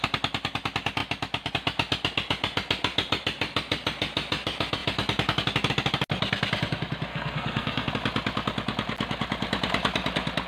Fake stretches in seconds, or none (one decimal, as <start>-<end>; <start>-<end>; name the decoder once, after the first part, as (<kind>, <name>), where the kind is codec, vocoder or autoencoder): 7.1-7.9 (codec, SNAC)